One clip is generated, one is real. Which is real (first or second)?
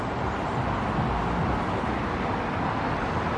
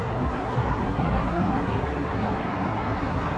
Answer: first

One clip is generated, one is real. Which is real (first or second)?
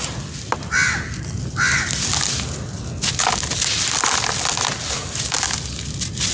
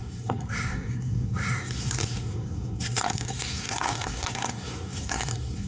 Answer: first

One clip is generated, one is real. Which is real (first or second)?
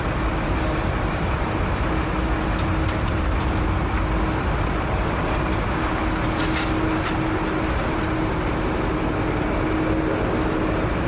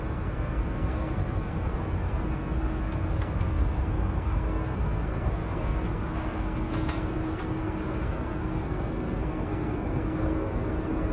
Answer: first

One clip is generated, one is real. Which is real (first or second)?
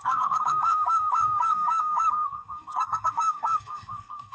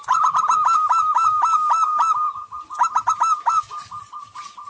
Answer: second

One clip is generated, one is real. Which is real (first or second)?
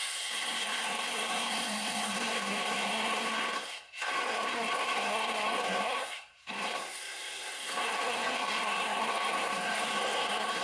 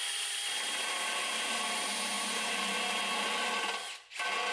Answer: second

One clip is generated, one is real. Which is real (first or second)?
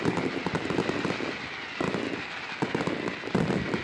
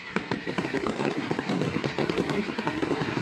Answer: first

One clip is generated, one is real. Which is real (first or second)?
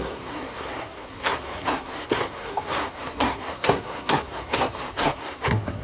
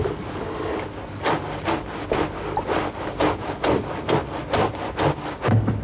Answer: second